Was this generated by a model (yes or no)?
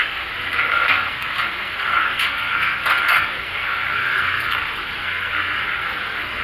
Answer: yes